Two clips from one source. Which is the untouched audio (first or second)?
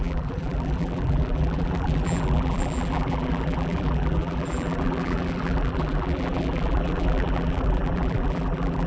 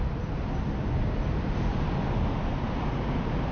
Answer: second